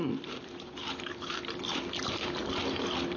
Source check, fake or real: fake